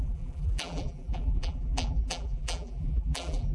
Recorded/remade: remade